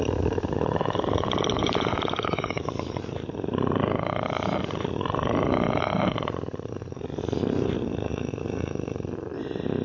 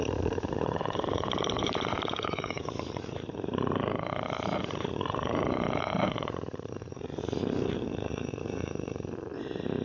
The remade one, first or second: second